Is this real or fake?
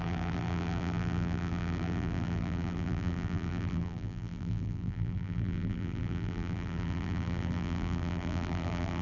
fake